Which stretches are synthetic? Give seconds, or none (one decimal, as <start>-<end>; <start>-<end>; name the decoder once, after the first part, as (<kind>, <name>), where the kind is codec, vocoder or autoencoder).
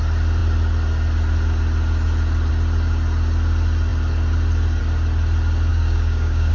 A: 5.7-6.5 (codec, DAC)